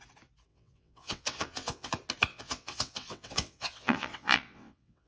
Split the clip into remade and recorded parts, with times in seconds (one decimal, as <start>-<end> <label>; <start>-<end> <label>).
0.0-0.5 recorded; 0.5-1.9 remade; 1.9-2.3 recorded; 2.3-5.1 remade